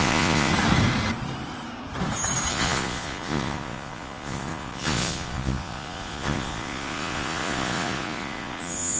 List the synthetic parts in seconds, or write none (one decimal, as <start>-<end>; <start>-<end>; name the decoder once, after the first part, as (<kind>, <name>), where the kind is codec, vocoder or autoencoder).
0.0-0.5 (vocoder, Vocos); 2.5-9.0